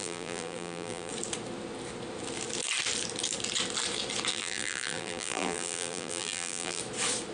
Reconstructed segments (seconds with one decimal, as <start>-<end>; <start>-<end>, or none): 0.0-1.1; 4.3-6.8